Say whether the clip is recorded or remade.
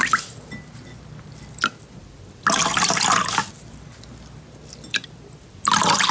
recorded